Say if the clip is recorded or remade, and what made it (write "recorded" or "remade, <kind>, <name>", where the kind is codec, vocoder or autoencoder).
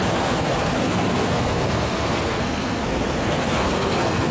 remade, codec, SNAC